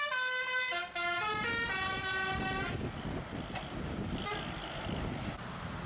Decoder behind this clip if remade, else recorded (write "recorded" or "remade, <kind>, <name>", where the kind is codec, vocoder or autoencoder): recorded